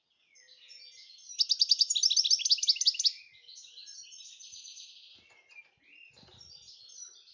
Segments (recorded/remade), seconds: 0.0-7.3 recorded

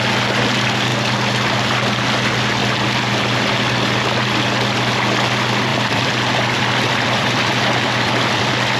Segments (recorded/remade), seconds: 0.0-5.7 recorded; 5.7-8.4 remade; 8.4-8.8 recorded

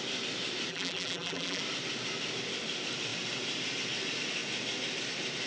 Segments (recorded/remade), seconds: 0.0-0.7 recorded; 0.7-1.6 remade; 1.6-5.5 recorded